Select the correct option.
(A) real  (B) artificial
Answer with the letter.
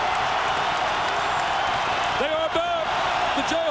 A